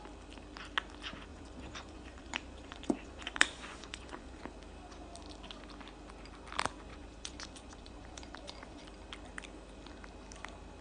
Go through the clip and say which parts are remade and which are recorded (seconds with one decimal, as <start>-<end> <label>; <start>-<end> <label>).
0.0-1.3 recorded; 1.3-4.4 remade; 4.4-6.9 recorded; 6.9-8.8 remade; 8.8-10.8 recorded